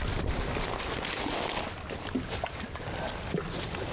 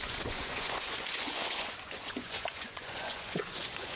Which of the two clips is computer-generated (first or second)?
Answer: second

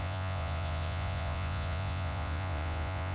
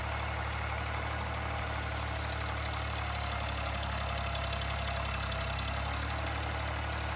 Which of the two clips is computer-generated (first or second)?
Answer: first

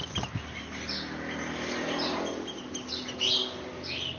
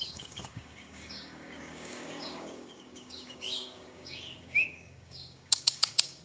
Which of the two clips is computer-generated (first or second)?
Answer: second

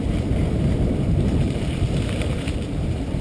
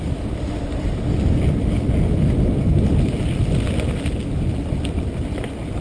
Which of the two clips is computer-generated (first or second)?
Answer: first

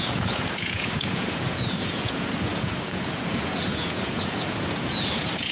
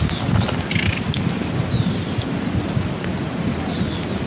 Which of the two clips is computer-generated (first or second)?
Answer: first